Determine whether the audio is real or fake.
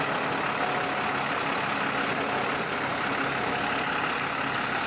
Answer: real